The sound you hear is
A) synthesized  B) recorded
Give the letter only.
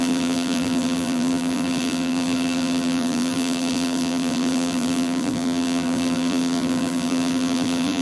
A